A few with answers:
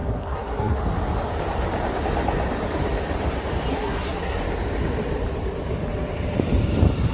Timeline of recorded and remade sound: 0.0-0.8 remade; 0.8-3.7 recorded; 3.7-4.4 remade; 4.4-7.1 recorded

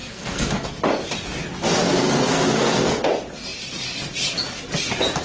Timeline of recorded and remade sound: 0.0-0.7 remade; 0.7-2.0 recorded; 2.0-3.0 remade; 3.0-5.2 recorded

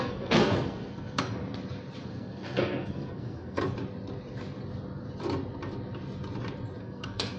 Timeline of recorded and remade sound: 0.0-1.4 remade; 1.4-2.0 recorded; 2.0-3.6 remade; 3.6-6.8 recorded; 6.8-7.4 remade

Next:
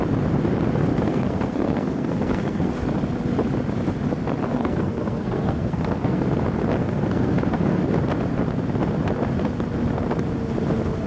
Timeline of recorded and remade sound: 0.0-0.9 recorded; 0.9-2.7 remade; 2.7-4.4 recorded; 4.4-6.2 remade; 6.2-6.8 recorded; 6.8-7.8 remade; 7.8-11.1 recorded

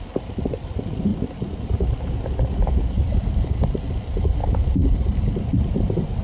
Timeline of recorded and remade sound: 0.0-6.2 recorded